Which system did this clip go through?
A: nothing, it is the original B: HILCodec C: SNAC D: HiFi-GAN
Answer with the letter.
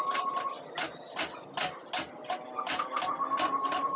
A